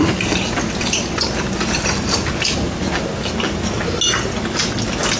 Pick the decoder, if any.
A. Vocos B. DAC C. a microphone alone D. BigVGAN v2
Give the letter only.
C